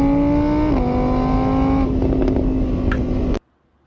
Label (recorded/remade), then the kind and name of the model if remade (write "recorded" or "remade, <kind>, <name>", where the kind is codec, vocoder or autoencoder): recorded